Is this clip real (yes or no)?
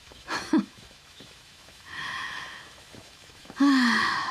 no